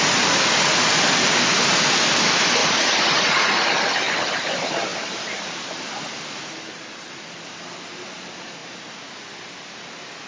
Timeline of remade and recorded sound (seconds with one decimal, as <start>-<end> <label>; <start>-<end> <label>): 0.0-2.6 recorded; 2.6-3.7 remade; 3.7-10.3 recorded